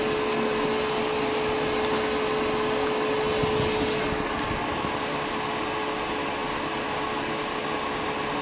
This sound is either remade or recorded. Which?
recorded